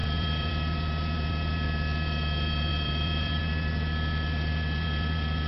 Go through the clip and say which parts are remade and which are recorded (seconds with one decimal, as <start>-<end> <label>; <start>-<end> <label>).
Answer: 0.0-0.5 remade; 0.5-2.7 recorded; 2.7-3.4 remade; 3.4-5.5 recorded